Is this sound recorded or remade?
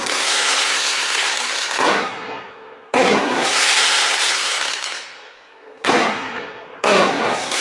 remade